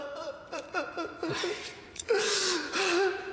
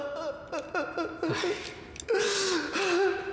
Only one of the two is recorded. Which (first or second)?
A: second